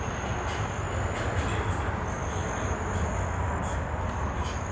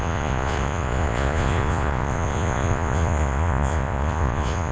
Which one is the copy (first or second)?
second